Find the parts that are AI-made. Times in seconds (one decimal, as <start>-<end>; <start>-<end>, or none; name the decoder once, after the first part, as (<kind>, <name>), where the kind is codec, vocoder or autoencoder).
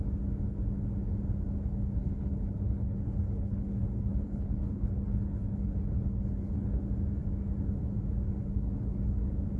2.0-6.8 (codec, HILCodec)